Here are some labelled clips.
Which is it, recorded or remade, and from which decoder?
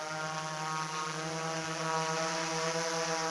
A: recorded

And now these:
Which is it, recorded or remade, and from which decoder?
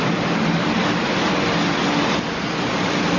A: recorded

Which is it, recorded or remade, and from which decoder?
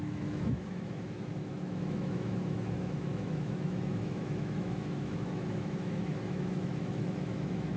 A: remade, autoencoder, DAC-VAE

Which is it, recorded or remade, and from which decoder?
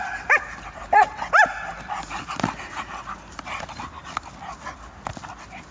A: recorded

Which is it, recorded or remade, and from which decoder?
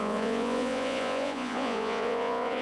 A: remade, vocoder, Vocos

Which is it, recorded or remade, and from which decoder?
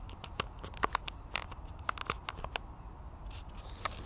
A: recorded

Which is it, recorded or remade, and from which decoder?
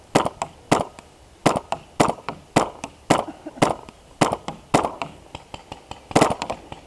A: recorded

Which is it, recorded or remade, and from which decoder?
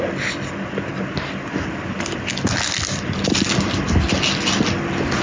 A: recorded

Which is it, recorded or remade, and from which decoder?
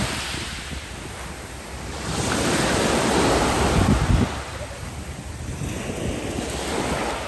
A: recorded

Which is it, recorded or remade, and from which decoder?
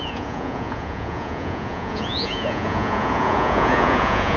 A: remade, vocoder, Vocos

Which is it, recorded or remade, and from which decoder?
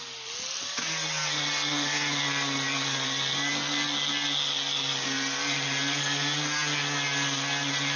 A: recorded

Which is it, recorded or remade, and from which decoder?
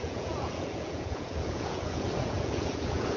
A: remade, vocoder, Vocos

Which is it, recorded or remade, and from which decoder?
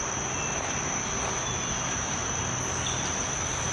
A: recorded